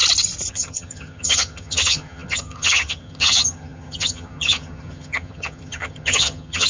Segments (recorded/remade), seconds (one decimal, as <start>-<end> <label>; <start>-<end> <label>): 0.0-0.5 recorded; 0.5-6.7 remade